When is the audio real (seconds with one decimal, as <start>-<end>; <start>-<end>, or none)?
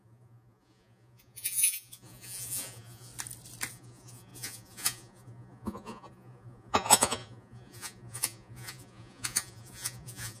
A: 3.1-3.7